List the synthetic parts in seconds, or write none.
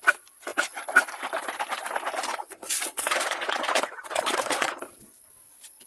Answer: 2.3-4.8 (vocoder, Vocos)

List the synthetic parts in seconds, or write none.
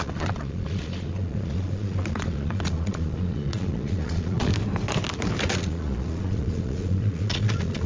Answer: 0.0-4.5 (vocoder, Vocos); 5.5-7.9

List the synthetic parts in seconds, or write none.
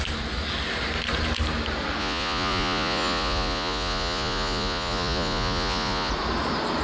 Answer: 2.0-6.1 (vocoder, Vocos)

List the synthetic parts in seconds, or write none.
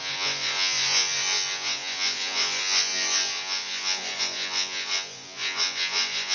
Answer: 0.0-6.3 (vocoder, Vocos)